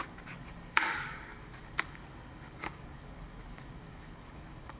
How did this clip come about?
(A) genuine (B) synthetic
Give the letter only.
B